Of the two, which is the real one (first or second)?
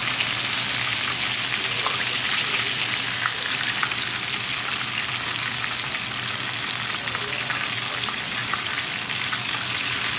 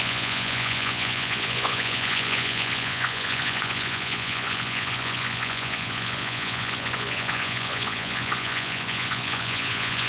first